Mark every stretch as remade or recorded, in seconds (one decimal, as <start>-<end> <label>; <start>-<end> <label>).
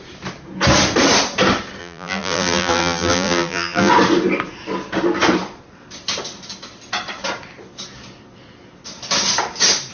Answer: 0.0-1.8 recorded; 1.8-3.9 remade; 3.9-9.9 recorded